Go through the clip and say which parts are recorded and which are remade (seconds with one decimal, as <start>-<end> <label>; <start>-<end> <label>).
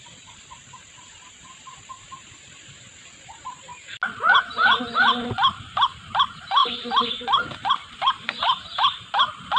0.0-3.7 remade; 3.7-4.4 recorded; 4.4-9.6 remade